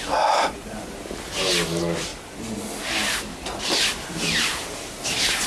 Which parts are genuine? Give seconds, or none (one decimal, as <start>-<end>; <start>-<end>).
0.0-5.5